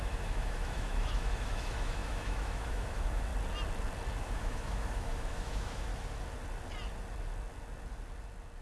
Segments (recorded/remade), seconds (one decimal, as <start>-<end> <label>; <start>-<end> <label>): 0.0-3.3 remade; 3.3-4.2 recorded; 4.2-5.9 remade; 5.9-8.6 recorded